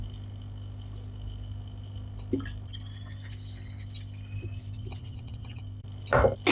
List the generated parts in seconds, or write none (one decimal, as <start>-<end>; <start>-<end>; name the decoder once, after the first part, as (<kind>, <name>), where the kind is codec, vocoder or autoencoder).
5.0-5.6 (vocoder, WaveNeXt)